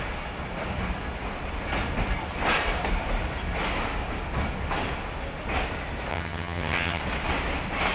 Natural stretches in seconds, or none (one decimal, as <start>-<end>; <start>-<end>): 0.0-6.1; 7.0-7.9